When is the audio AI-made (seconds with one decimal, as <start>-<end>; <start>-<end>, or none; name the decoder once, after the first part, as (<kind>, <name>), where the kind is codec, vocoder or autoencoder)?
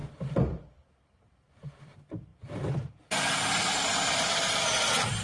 none